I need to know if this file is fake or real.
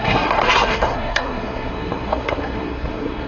fake